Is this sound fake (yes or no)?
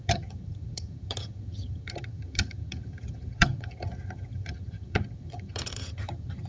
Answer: yes